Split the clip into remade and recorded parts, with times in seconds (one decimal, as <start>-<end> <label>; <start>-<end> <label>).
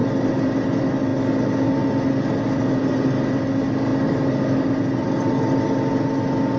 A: 0.0-6.6 recorded